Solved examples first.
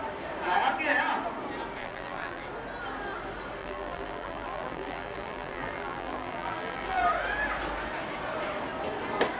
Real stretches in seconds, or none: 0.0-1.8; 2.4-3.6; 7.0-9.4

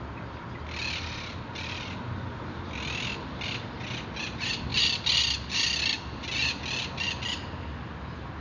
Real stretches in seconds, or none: 0.0-8.4